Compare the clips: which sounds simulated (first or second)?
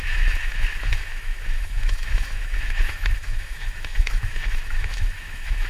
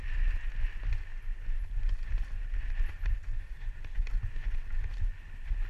first